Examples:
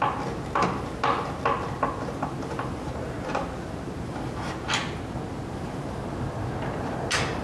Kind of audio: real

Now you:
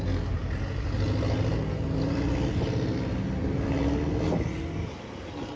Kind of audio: real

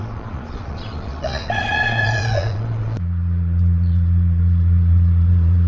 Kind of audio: fake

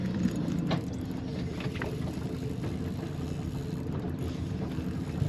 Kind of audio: real